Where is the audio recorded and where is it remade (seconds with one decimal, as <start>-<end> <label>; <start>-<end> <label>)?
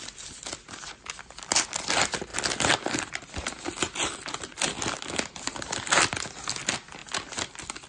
0.0-7.9 recorded